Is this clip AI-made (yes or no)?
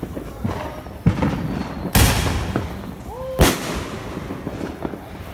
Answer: no